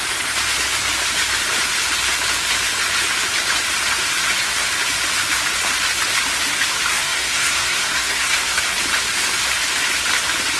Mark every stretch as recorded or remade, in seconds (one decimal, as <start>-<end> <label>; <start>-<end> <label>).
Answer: 0.0-6.9 recorded; 6.9-8.6 remade; 8.6-10.6 recorded